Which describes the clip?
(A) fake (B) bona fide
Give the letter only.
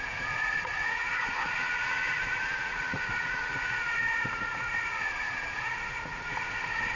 A